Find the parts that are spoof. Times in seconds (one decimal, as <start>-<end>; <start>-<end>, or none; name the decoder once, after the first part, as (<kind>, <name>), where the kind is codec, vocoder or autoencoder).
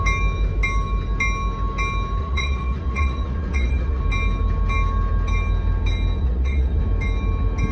2.2-4.0 (vocoder, Vocos); 6.2-6.8